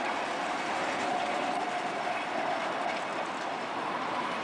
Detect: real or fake real